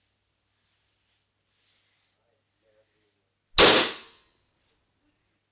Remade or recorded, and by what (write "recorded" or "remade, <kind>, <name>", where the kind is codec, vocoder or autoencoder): recorded